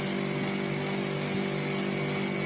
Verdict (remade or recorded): recorded